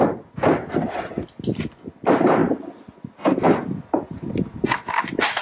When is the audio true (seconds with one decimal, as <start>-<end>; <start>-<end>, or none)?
0.0-5.4